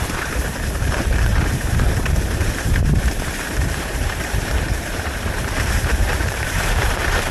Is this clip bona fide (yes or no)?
no